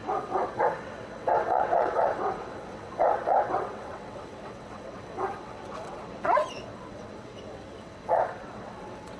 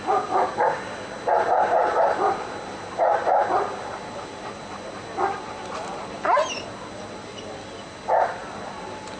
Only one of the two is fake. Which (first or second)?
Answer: first